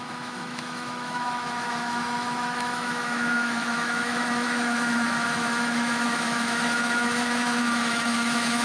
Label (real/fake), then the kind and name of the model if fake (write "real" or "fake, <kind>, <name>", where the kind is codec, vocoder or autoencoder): fake, autoencoder, DAC-VAE